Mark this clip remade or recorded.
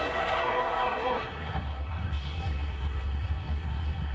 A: remade